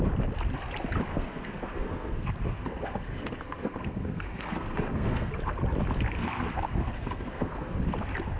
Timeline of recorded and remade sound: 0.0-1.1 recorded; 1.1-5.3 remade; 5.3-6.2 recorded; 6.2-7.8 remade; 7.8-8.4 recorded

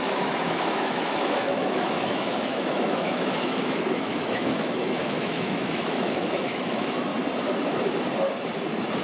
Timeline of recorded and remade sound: 0.0-7.1 remade; 7.1-9.0 recorded

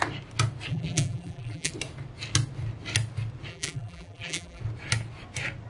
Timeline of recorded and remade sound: 0.0-0.7 recorded; 0.7-1.7 remade; 1.7-3.5 recorded; 3.5-4.6 remade; 4.6-5.7 recorded

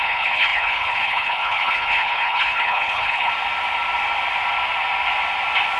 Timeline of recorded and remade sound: 0.0-3.3 remade; 3.3-5.8 recorded

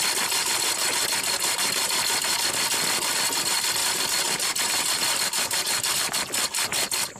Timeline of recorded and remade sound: 0.0-7.2 recorded